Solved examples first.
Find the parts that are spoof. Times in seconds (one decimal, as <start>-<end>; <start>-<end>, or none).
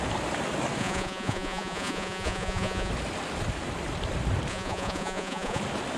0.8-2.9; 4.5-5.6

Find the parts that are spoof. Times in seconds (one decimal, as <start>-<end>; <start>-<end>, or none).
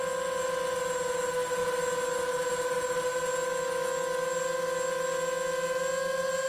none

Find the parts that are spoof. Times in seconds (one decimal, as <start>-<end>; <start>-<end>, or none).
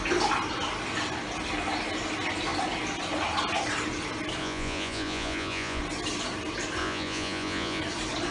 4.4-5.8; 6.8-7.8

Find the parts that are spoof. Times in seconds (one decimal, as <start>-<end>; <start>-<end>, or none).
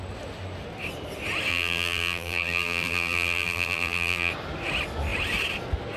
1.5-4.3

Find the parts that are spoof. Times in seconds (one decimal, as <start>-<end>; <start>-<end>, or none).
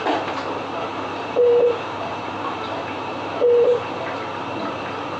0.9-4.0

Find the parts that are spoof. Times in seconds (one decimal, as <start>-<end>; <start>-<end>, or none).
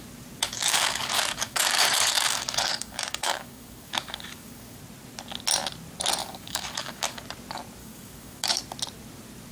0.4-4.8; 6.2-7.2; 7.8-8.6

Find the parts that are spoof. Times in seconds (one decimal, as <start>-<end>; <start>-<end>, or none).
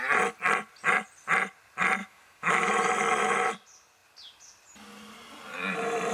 2.0-2.7